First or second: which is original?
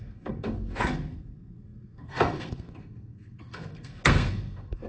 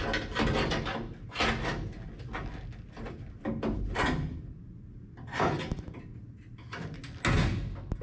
second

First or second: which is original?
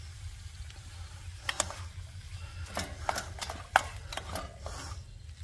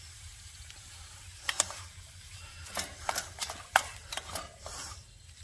first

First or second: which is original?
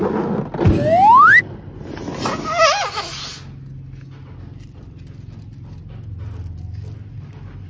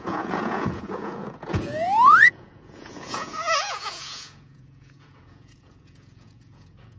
first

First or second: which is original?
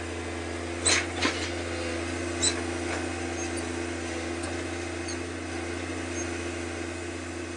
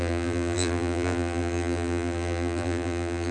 first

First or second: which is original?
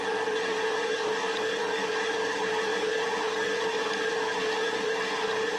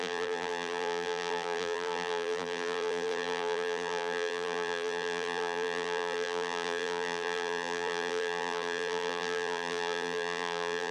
first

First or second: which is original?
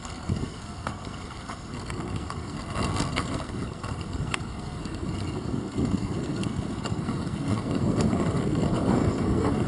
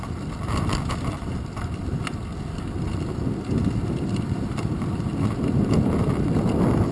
second